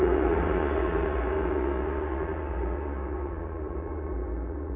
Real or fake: fake